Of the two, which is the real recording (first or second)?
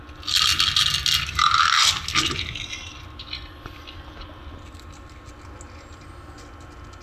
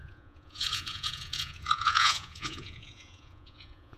first